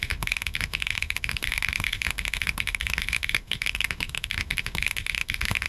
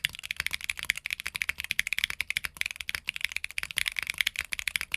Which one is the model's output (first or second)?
first